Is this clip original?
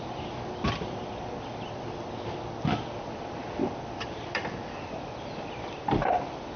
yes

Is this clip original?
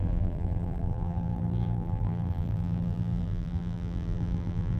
no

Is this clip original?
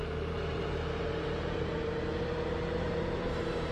no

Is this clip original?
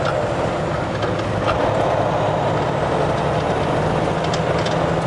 yes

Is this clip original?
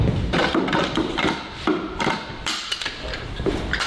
no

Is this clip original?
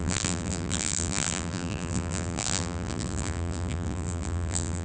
no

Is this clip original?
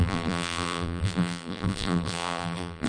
no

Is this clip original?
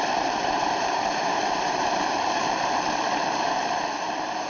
no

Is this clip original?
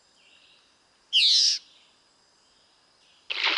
yes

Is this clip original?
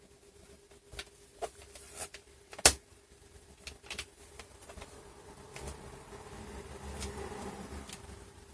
yes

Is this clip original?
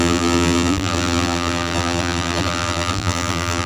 no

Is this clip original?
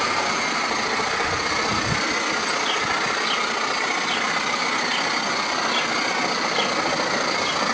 yes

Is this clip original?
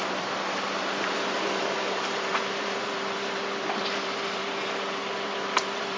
no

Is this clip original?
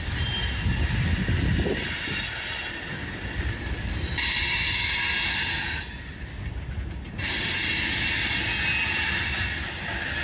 yes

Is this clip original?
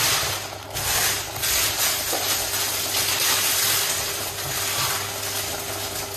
yes